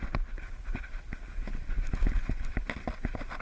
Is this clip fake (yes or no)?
no